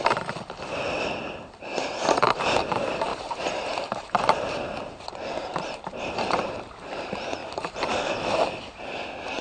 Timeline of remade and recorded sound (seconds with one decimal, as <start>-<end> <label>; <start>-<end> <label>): 0.0-1.7 recorded; 1.7-2.2 remade; 2.2-3.1 recorded; 3.1-6.6 remade; 6.6-7.4 recorded; 7.4-7.9 remade; 7.9-9.4 recorded